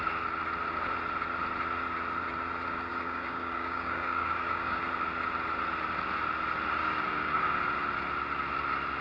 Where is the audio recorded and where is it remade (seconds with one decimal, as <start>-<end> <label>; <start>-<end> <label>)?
0.0-2.9 recorded; 2.9-4.8 remade; 4.8-6.8 recorded; 6.8-7.4 remade; 7.4-9.0 recorded